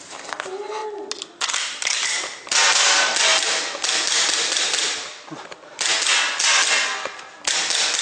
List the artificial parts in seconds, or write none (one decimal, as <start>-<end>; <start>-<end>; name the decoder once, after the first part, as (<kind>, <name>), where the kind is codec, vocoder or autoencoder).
none